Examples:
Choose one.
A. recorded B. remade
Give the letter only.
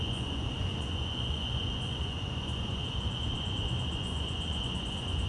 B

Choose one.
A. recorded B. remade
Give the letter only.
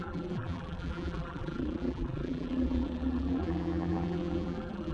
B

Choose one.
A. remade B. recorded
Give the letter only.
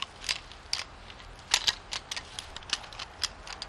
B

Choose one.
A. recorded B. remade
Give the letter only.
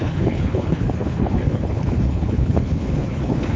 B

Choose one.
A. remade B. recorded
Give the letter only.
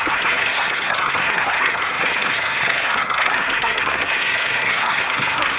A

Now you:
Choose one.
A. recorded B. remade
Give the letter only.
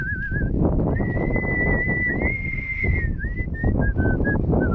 A